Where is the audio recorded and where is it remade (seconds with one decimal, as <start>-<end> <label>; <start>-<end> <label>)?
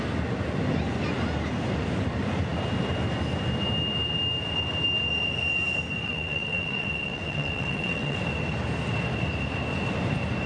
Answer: 0.0-6.0 recorded; 6.0-8.2 remade; 8.2-10.5 recorded